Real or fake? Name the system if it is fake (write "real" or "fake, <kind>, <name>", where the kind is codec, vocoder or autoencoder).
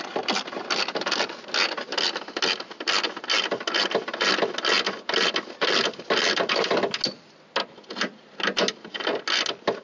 real